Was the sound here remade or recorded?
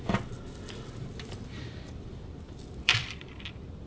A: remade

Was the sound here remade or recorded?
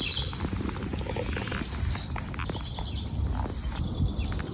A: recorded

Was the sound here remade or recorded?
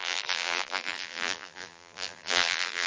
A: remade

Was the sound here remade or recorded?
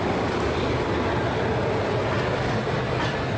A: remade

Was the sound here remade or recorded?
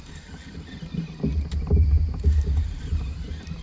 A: remade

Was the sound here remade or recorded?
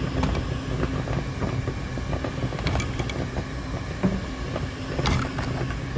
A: recorded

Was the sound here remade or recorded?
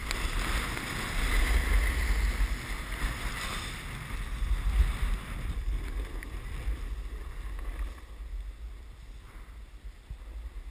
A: recorded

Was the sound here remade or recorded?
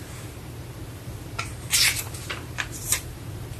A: remade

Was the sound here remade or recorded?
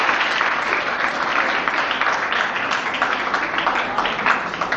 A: recorded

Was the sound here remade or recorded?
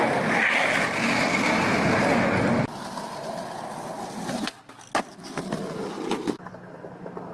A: recorded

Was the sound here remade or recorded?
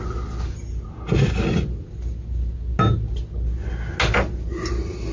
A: recorded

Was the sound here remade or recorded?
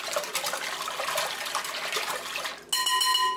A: recorded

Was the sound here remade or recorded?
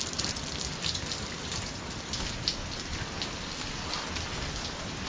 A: remade